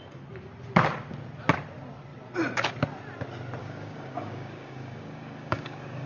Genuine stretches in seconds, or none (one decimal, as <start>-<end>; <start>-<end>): 0.0-3.6